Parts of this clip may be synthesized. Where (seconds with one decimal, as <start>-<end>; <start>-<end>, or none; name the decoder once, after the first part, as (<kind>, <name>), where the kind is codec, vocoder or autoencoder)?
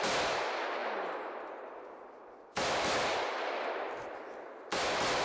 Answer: 0.8-3.9 (vocoder, BigVGAN v2)